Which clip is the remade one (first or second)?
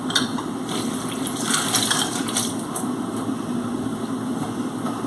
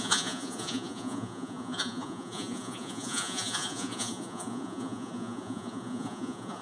second